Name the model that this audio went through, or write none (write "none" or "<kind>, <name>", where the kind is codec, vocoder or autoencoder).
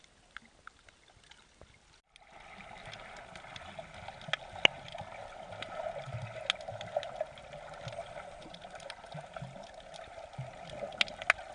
none